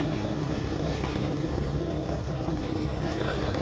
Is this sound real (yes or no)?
no